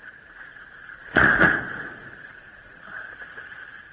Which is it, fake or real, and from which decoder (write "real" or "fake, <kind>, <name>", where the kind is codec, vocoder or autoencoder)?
fake, vocoder, Vocos